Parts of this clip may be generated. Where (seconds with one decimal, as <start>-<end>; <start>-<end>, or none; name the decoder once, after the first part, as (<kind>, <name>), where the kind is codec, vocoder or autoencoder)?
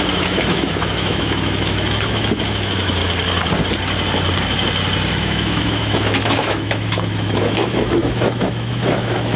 0.0-3.0 (autoencoder, DAC-VAE); 5.1-9.4